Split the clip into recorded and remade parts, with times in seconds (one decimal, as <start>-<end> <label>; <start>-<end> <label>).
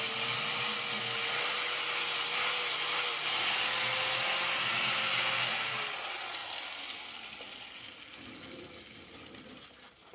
0.0-10.1 recorded